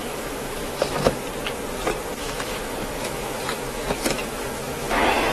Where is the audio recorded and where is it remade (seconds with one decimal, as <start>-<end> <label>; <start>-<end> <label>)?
0.0-1.2 remade; 1.2-2.1 recorded; 2.1-5.3 remade